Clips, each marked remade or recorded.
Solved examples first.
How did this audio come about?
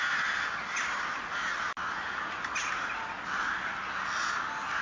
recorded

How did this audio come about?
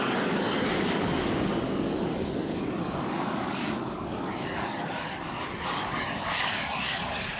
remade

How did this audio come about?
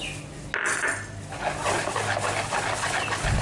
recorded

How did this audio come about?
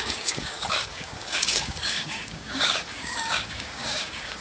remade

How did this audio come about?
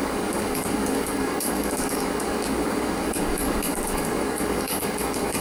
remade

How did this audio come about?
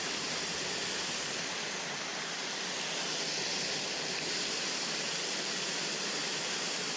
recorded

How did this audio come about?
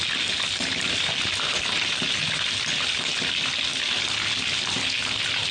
recorded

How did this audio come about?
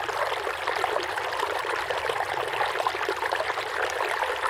recorded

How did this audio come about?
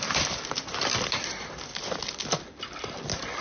recorded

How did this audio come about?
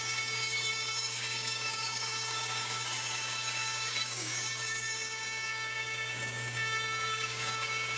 remade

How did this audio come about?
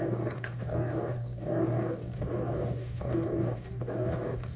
remade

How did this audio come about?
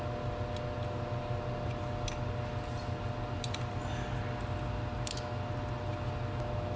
recorded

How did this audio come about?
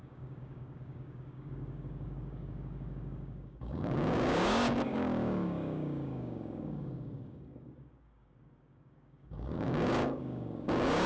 remade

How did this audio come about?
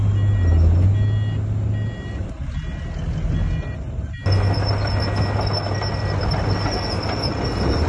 recorded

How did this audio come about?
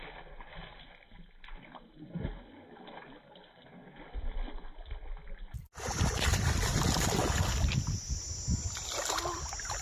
recorded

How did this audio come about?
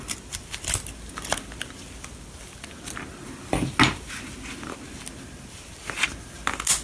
recorded